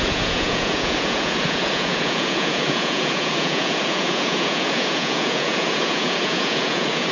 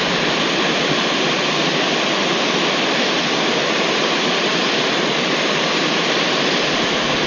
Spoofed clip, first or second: first